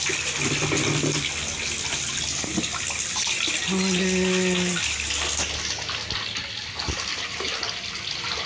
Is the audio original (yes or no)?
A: yes